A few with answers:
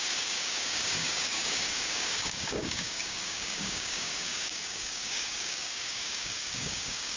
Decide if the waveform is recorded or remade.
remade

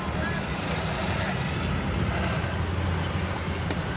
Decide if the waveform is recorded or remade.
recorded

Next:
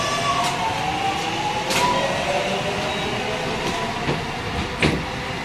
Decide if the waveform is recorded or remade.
recorded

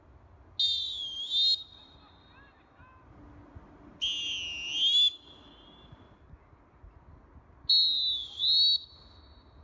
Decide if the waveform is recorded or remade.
recorded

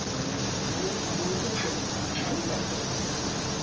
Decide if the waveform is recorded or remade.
recorded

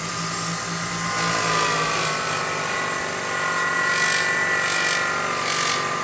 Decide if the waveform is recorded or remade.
recorded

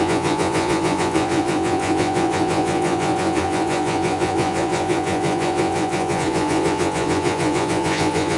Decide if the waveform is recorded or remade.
remade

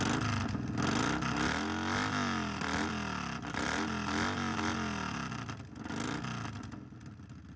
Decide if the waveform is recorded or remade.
recorded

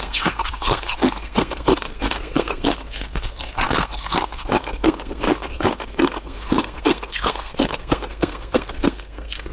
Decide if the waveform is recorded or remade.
remade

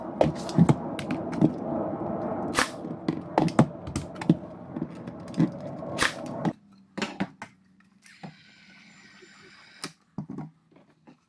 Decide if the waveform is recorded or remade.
recorded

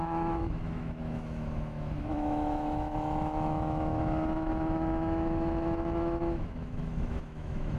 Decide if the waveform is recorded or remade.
remade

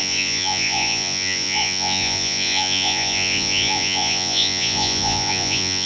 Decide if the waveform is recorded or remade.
remade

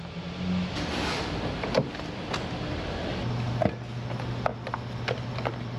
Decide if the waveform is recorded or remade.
recorded